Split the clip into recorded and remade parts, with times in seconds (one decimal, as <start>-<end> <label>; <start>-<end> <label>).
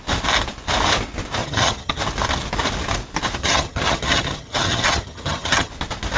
0.0-1.4 recorded; 1.4-2.0 remade; 2.0-3.4 recorded; 3.4-5.7 remade; 5.7-6.2 recorded